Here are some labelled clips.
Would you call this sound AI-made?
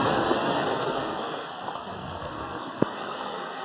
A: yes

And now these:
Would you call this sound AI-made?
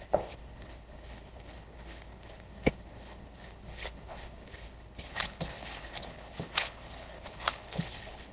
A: yes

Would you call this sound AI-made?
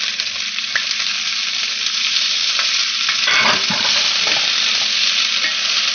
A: yes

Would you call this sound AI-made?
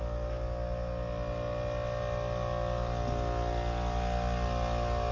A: no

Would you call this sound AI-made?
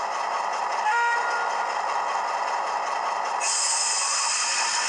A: no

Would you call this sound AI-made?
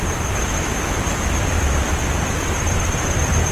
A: yes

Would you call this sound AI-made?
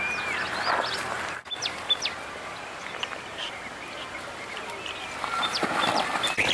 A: no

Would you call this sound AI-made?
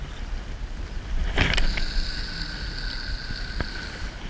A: no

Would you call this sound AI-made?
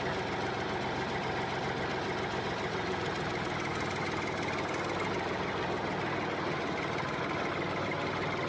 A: no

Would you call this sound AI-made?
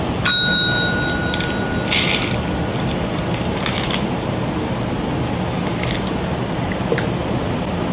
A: no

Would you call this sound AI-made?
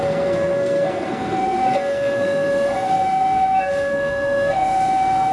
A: yes